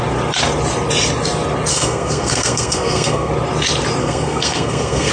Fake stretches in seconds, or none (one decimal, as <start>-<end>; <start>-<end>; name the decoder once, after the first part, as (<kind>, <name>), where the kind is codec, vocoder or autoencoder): 1.7-3.3 (codec, SNAC); 4.0-5.1